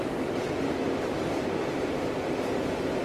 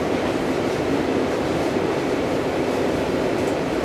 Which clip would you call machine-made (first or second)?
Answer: second